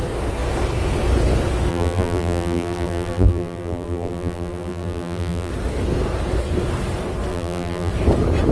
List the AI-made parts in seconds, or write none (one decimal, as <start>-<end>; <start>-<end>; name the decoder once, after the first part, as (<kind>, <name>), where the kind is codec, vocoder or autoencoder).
1.7-5.5 (vocoder, BigVGAN v2); 7.3-7.9